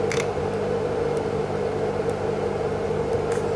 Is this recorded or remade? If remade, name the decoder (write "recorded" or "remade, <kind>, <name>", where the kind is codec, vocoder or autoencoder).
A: recorded